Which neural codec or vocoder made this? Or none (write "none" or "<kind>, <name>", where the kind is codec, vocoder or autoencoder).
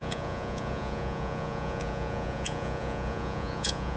vocoder, Vocos